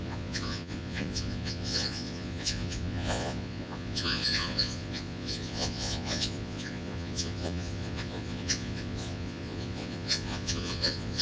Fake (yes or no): yes